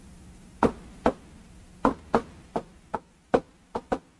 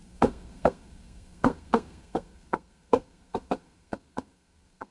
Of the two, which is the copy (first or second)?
second